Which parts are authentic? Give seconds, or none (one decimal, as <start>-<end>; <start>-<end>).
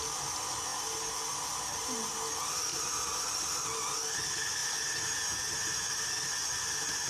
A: 0.0-2.7; 3.3-7.1